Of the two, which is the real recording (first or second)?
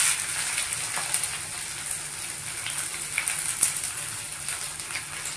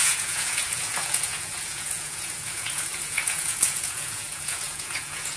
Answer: first